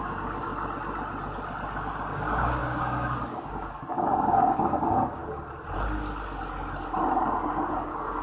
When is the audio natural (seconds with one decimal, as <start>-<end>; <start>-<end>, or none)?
0.5-2.1; 5.2-7.7